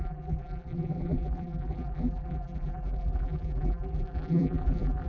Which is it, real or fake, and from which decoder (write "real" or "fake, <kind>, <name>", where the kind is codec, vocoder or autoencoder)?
fake, vocoder, BigVGAN v2